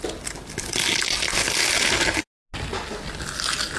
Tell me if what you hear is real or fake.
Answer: real